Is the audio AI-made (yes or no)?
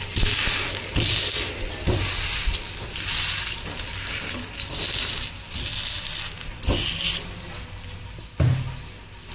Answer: no